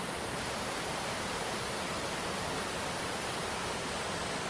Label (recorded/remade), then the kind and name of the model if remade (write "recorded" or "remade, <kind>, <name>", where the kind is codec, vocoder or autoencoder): recorded